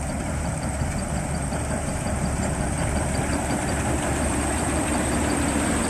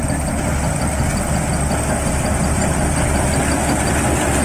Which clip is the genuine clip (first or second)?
second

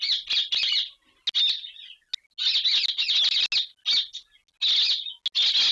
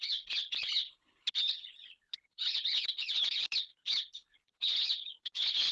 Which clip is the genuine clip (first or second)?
first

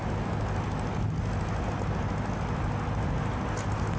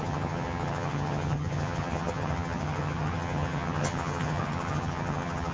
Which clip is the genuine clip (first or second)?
first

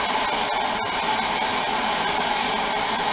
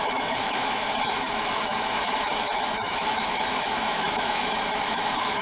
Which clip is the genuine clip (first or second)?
first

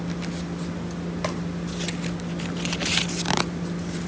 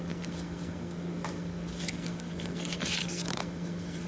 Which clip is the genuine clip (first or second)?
first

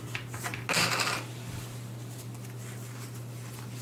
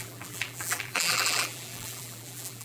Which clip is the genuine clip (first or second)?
first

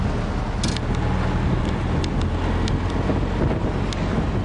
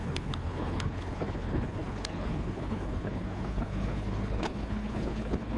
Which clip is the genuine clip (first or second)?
first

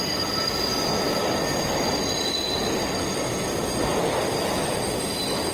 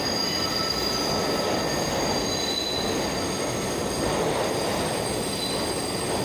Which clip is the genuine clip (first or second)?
second